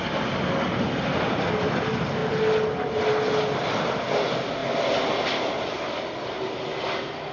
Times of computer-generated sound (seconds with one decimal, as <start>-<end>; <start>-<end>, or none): none